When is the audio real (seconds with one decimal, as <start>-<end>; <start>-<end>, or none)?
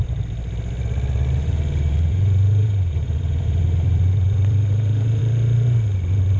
0.0-1.4; 5.2-6.4